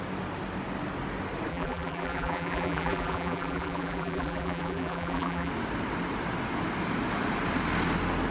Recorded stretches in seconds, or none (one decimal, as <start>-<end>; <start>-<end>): 0.0-1.5; 5.5-8.3